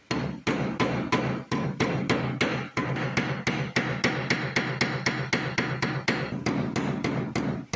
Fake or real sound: real